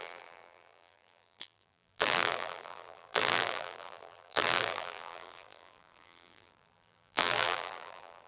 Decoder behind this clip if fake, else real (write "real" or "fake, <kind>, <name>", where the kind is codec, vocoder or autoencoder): fake, vocoder, BigVGAN v2